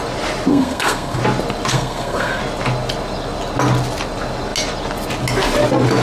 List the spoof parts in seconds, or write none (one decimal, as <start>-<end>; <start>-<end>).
0.5-1.2; 1.7-2.4

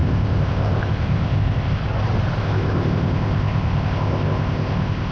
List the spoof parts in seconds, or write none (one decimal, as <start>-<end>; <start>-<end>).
0.0-1.8; 2.4-5.1

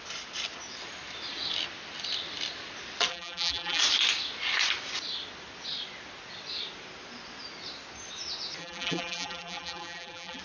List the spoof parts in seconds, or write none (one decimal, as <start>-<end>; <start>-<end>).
3.1-3.8; 8.6-10.4

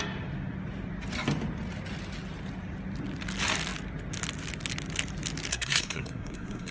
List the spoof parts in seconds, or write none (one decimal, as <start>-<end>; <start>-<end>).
5.5-6.7

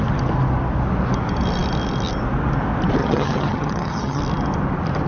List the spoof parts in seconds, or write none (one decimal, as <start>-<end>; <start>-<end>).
3.0-4.2

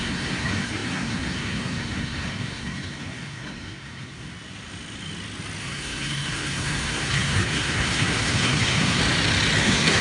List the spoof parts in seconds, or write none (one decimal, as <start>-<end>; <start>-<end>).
0.0-4.3; 5.6-9.0; 9.6-10.0

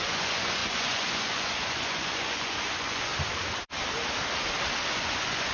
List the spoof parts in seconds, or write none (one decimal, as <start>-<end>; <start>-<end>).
0.0-3.1; 4.9-5.5